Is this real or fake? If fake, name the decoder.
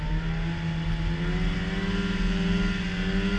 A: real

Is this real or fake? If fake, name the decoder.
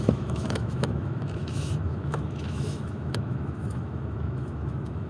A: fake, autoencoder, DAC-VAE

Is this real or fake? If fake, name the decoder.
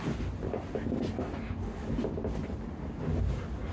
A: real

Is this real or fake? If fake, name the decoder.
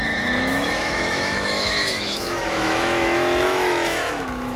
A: fake, autoencoder, DAC-VAE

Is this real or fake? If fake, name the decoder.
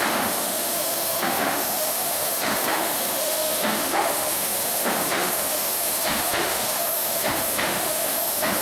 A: fake, autoencoder, DAC-VAE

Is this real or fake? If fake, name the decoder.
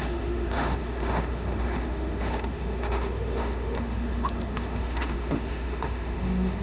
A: fake, autoencoder, DAC-VAE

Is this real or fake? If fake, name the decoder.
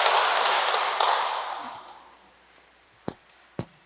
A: real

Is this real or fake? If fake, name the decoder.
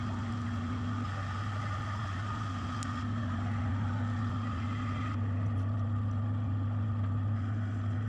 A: real